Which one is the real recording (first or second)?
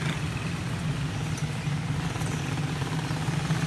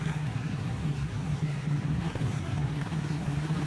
first